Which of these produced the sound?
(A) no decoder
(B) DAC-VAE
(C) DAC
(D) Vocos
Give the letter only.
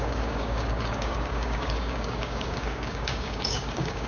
C